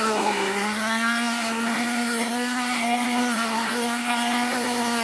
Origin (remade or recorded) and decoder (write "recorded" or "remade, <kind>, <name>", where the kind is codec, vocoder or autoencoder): remade, codec, SNAC